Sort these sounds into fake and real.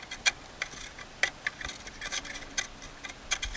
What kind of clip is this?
real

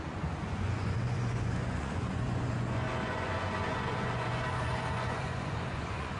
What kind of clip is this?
fake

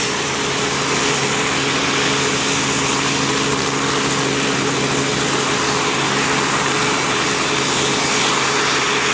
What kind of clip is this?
real